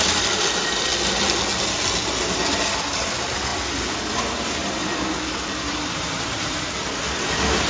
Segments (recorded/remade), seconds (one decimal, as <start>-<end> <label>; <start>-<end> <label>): 0.0-0.9 remade; 0.9-2.8 recorded; 2.8-3.5 remade; 3.5-4.1 recorded; 4.1-7.7 remade